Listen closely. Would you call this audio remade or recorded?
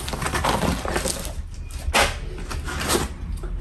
recorded